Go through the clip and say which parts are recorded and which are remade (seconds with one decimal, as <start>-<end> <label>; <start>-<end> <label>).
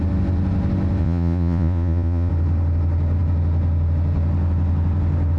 0.0-1.0 recorded; 1.0-2.3 remade; 2.3-5.4 recorded